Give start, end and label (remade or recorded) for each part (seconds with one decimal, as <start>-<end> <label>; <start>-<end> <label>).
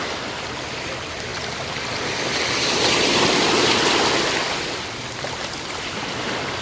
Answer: 0.0-6.6 recorded